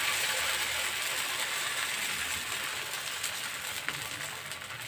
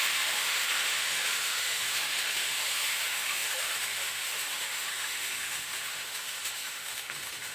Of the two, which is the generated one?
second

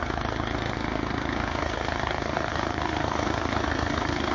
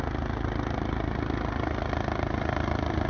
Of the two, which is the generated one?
first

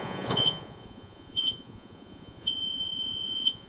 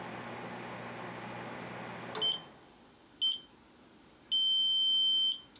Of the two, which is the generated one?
first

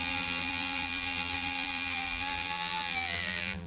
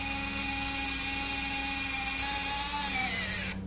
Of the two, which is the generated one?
first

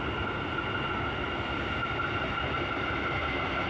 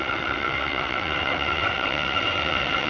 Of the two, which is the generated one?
second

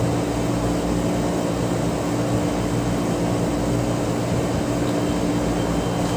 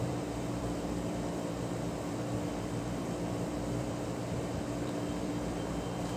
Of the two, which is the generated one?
second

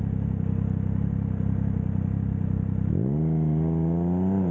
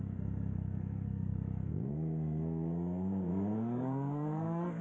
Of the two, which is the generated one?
second